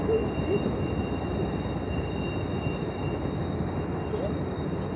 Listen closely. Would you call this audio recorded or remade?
recorded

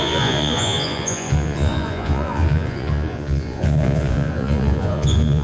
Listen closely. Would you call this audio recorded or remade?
remade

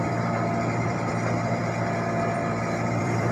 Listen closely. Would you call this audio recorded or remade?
remade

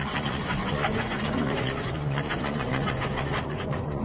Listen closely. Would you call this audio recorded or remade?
remade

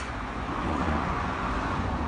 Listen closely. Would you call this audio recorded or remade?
remade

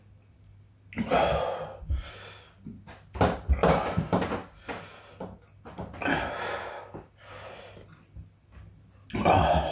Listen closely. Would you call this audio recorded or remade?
recorded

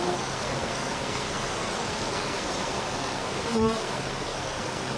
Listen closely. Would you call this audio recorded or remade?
remade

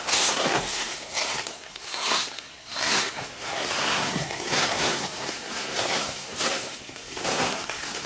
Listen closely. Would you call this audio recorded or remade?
remade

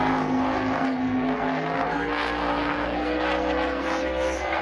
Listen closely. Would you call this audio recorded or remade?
remade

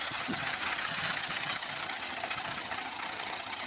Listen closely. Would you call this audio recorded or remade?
remade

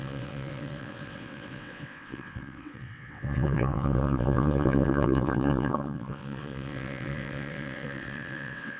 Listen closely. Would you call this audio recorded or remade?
remade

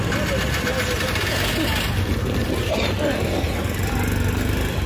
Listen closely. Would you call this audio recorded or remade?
recorded